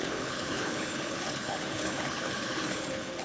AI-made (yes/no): yes